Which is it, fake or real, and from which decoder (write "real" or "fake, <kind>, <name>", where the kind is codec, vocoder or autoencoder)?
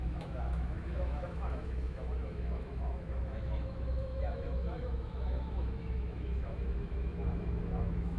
fake, autoencoder, DAC-VAE